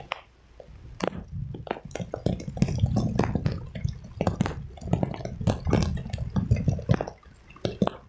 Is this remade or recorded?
recorded